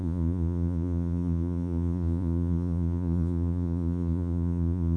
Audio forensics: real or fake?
fake